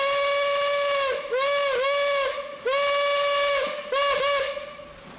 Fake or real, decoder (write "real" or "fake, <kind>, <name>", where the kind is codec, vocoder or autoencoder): real